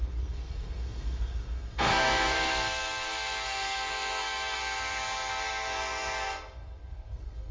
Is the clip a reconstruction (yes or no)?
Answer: yes